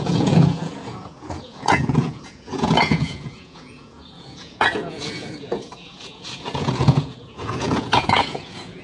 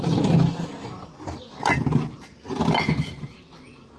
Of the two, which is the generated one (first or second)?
first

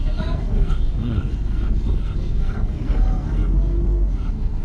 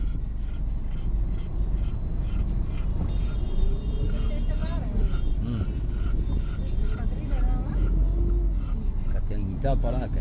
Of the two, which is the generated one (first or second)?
first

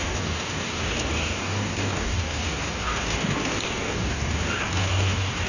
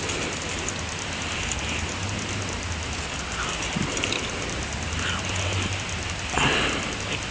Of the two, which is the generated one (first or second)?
first